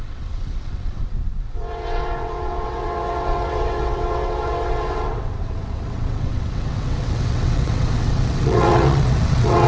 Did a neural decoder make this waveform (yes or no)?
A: yes